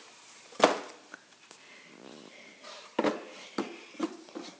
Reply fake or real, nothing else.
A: real